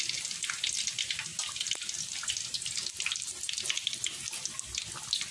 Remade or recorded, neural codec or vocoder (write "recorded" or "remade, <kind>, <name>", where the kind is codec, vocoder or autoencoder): recorded